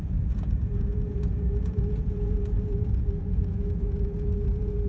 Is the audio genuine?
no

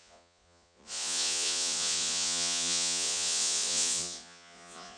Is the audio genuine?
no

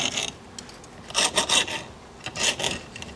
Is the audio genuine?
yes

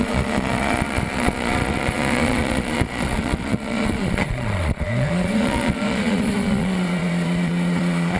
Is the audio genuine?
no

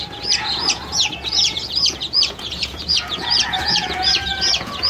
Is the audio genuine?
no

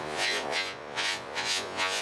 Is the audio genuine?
no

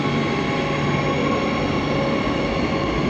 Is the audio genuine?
yes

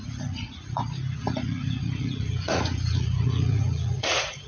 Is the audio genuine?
no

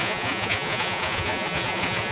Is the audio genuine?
no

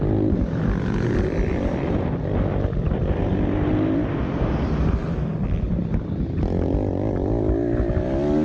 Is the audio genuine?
yes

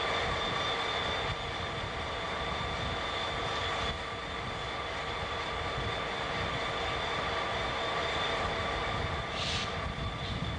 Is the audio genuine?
yes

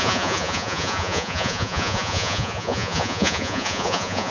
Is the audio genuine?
no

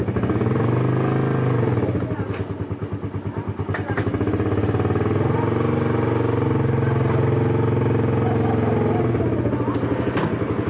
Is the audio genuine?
yes